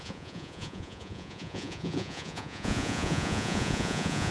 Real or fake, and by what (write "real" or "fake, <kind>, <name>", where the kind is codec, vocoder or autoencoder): fake, vocoder, Vocos